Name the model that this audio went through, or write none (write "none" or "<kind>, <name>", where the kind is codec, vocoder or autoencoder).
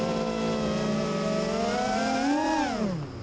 none